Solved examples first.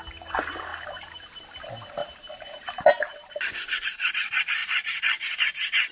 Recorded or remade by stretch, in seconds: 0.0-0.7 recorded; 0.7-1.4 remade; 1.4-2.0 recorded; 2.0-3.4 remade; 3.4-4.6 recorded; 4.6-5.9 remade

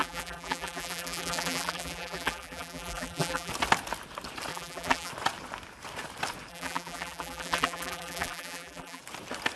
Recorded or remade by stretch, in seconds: 0.0-3.5 remade; 3.5-4.5 recorded; 4.5-5.1 remade; 5.1-6.5 recorded; 6.5-9.0 remade; 9.0-9.6 recorded

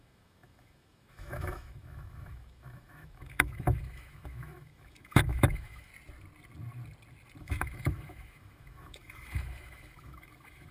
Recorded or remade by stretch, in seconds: 0.0-5.9 remade; 5.9-7.4 recorded; 7.4-10.7 remade

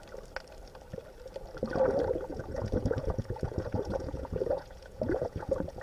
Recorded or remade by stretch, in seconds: 0.0-2.3 recorded; 2.3-5.8 remade

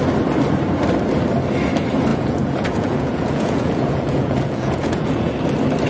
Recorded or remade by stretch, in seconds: 0.0-2.1 recorded; 2.1-5.3 remade; 5.3-5.9 recorded

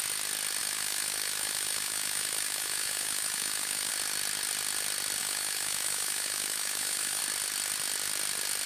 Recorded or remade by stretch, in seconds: 0.0-0.6 recorded; 0.6-3.9 remade; 3.9-5.2 recorded; 5.2-7.2 remade; 7.2-8.7 recorded

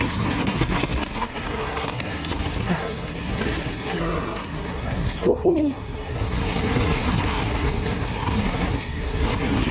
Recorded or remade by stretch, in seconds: 0.0-9.7 remade

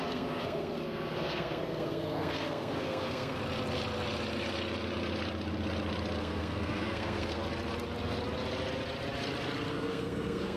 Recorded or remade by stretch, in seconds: 0.0-3.4 remade; 3.4-6.2 recorded; 6.2-7.4 remade; 7.4-9.7 recorded; 9.7-10.6 remade